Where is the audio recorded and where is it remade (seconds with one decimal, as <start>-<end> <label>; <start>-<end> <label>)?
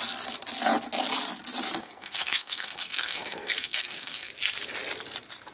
0.0-1.8 recorded; 1.8-4.3 remade; 4.3-5.5 recorded